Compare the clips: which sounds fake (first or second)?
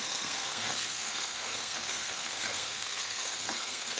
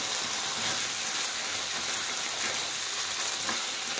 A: first